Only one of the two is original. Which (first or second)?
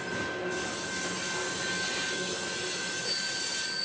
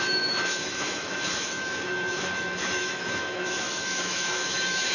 first